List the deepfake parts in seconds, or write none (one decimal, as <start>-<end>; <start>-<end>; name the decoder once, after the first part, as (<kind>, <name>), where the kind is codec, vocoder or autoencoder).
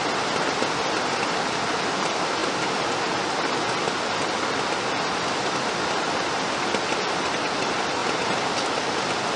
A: none